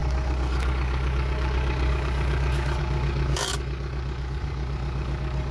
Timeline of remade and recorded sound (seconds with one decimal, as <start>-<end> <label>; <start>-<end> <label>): 0.0-5.5 remade